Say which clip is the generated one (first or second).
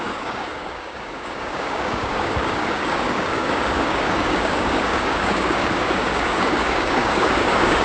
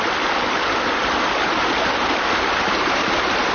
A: first